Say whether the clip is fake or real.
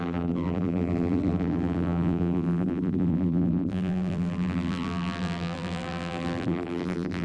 fake